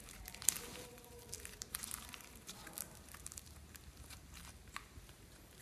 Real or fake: fake